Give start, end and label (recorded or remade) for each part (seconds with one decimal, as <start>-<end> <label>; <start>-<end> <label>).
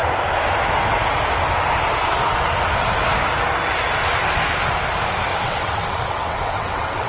0.0-5.3 recorded; 5.3-7.1 remade